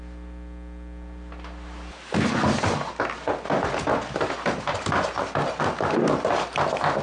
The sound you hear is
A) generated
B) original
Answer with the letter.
B